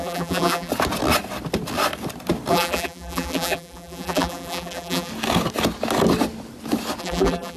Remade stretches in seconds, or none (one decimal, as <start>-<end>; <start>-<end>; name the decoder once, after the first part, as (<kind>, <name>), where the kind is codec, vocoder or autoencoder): 0.0-0.7 (vocoder, BigVGAN v2); 2.5-5.1; 7.0-7.6